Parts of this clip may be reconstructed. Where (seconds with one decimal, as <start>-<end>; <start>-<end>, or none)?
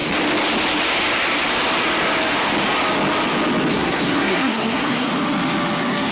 3.7-5.1